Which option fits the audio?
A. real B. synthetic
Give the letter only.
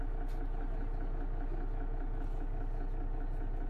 A